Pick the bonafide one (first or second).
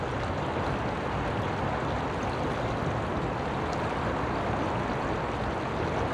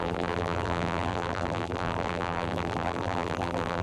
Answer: first